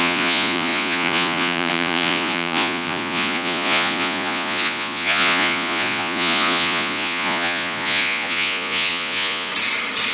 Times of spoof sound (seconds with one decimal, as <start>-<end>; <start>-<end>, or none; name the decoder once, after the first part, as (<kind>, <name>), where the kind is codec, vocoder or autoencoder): 0.0-9.5 (vocoder, Vocos)